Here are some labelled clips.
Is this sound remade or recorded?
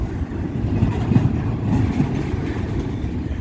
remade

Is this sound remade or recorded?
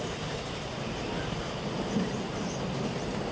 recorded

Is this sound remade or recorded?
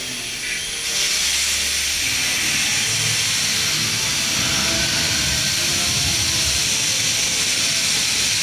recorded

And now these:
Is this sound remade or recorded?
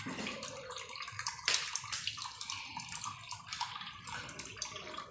remade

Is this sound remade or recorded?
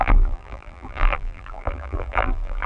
remade